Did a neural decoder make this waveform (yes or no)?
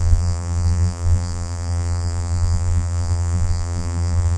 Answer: yes